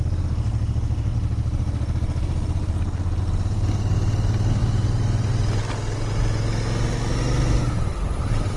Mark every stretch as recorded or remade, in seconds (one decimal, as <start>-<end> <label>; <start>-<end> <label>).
0.0-8.6 recorded